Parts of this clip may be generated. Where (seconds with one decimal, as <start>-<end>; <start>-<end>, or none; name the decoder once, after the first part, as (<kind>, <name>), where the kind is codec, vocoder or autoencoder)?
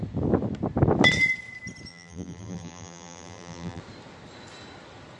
1.9-3.8 (vocoder, BigVGAN v2)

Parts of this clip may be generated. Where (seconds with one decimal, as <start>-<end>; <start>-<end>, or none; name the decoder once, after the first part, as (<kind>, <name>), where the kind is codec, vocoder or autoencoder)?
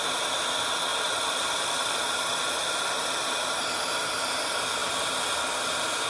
0.9-3.6 (vocoder, BigVGAN v2)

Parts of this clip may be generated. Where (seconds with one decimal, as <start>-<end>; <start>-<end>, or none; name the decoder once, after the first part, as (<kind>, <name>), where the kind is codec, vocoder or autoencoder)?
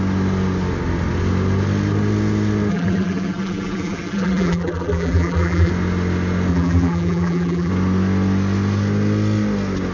2.7-5.7 (vocoder, BigVGAN v2); 6.5-7.7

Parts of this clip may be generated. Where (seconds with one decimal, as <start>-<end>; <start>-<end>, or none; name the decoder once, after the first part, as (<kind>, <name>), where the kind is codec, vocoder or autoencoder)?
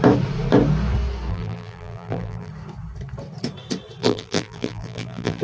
1.3-2.5 (vocoder, BigVGAN v2); 4.0-5.4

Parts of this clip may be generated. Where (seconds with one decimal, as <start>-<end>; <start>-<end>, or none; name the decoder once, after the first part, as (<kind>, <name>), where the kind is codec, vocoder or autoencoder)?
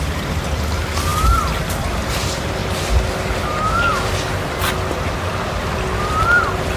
0.0-2.6 (vocoder, BigVGAN v2); 3.4-3.9; 4.4-6.8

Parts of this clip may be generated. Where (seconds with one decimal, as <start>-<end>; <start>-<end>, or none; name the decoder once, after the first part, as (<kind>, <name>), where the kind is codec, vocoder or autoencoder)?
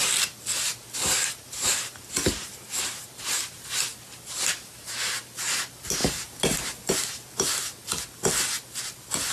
6.0-6.9 (vocoder, BigVGAN v2)